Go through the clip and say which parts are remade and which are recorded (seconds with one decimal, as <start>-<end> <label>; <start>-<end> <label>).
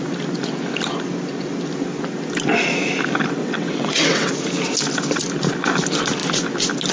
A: 0.0-3.4 recorded; 3.4-4.3 remade; 4.3-6.9 recorded